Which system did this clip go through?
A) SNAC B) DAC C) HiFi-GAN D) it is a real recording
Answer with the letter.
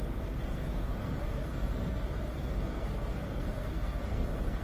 A